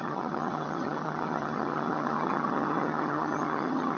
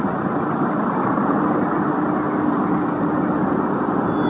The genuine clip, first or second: second